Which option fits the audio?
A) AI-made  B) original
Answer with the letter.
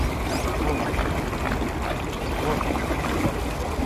B